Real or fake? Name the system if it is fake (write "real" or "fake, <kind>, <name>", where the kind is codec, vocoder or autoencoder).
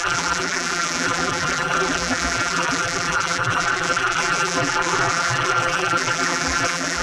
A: fake, vocoder, BigVGAN v2